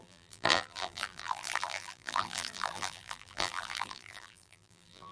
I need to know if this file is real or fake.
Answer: fake